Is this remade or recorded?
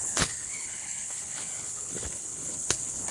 remade